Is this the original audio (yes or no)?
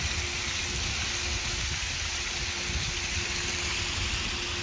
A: yes